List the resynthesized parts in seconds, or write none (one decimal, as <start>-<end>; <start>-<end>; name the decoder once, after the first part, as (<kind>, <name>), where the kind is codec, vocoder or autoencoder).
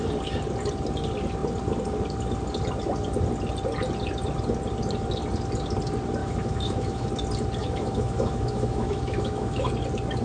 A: 6.2-7.1 (autoencoder, DAC-VAE); 7.6-9.7